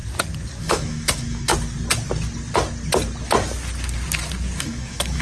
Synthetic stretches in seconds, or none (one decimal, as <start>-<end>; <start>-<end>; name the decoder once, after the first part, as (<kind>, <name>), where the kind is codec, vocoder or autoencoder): 0.6-1.5 (autoencoder, DAC-VAE); 4.6-5.2